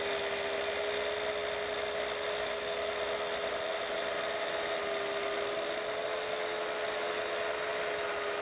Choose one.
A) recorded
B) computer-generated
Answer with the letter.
A